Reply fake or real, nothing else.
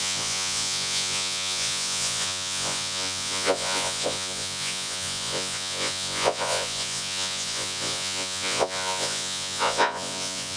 fake